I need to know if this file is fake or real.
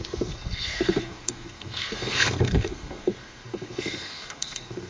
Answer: fake